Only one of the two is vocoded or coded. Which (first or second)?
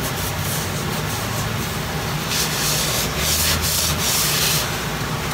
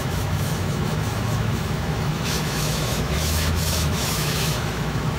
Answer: second